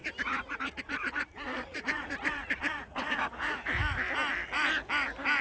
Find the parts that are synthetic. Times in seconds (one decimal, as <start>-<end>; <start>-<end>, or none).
0.0-3.8